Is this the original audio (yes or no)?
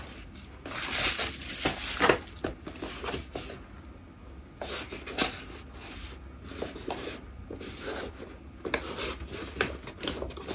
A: yes